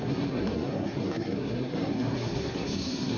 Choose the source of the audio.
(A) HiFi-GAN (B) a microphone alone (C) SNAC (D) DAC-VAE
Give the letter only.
C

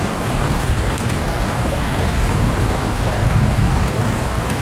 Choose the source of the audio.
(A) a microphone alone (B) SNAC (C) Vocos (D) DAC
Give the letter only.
D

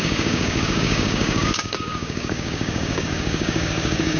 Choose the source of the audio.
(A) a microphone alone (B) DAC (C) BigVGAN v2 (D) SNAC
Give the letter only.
B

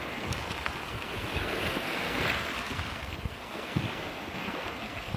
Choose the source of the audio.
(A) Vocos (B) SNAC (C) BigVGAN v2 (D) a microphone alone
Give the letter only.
B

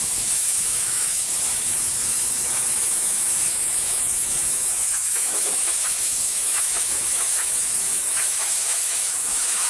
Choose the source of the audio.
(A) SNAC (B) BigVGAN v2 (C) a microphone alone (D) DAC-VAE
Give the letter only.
D